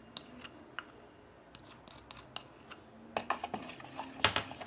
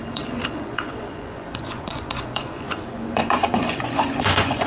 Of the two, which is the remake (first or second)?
second